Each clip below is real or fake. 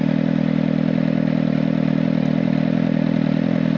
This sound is real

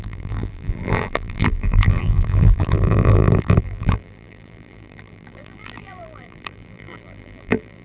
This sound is fake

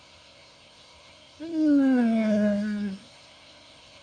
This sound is fake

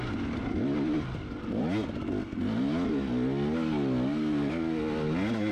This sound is real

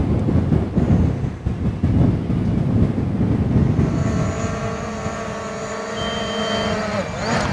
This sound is real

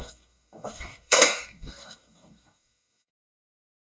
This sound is fake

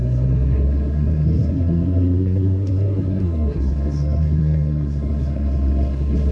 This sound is fake